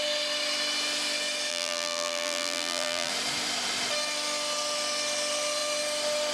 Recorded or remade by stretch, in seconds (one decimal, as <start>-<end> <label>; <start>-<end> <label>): 0.0-1.5 recorded; 1.5-3.1 remade; 3.1-6.3 recorded